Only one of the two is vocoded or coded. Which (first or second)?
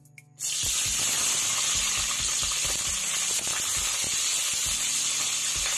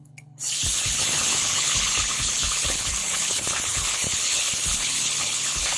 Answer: second